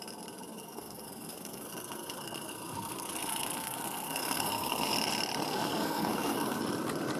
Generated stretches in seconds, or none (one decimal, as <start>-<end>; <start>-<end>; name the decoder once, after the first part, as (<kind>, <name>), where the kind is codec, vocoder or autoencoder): 0.6-4.9 (codec, SNAC); 5.4-6.6